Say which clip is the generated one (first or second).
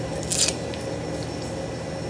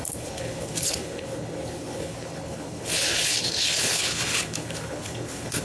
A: second